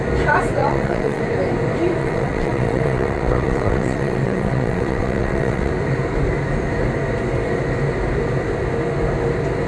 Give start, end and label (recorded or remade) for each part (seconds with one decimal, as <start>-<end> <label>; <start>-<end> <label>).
0.0-0.6 recorded; 0.6-1.2 remade; 1.2-2.0 recorded; 2.0-5.7 remade; 5.7-9.7 recorded